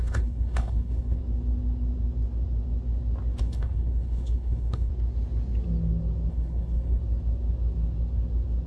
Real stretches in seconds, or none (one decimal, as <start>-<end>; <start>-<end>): 1.2-3.4; 4.9-6.3; 7.0-8.7